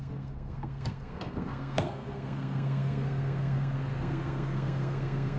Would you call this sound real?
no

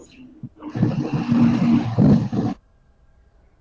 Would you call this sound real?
yes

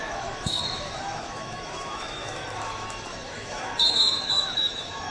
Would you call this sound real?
no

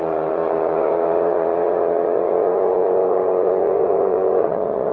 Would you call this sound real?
no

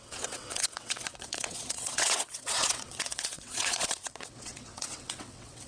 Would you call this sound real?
no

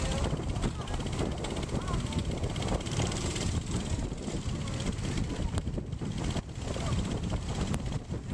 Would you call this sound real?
yes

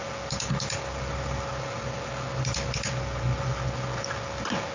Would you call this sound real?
yes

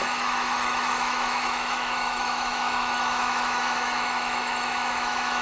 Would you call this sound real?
no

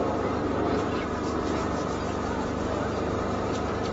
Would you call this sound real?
no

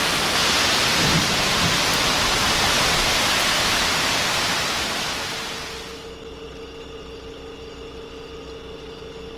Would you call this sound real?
yes